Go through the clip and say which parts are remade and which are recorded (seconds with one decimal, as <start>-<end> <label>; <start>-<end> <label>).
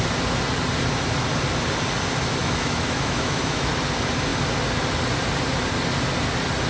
0.0-2.4 recorded; 2.4-3.7 remade; 3.7-6.7 recorded